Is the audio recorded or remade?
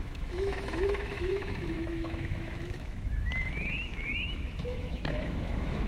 remade